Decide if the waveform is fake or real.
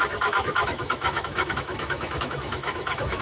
fake